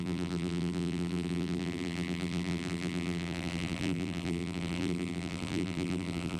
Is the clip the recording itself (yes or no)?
no